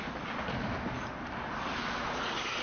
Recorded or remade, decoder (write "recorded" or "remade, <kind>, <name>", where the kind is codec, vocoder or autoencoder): recorded